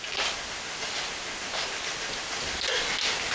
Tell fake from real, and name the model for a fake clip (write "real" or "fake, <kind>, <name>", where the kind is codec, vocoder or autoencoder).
real